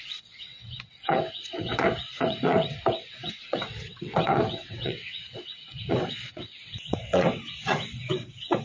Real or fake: fake